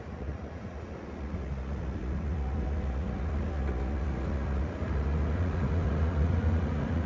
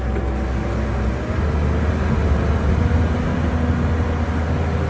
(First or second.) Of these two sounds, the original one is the second